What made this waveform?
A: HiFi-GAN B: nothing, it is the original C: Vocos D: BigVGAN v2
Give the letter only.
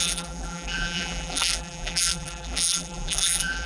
D